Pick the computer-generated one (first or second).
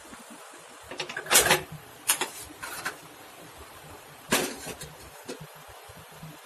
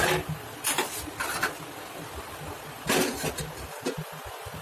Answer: first